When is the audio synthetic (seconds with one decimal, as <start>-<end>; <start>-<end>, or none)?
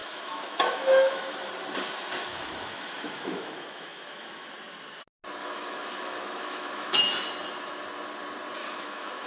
0.0-1.5; 2.2-4.5; 5.4-7.0; 8.6-9.3